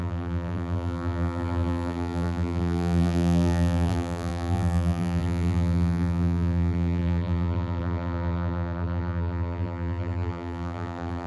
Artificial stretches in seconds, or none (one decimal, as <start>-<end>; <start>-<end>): 0.0-11.3